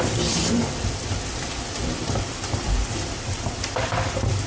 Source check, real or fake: fake